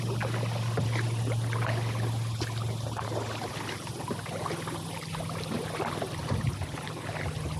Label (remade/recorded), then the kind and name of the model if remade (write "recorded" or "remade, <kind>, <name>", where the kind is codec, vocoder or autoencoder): recorded